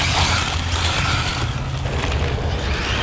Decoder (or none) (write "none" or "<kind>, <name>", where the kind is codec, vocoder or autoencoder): none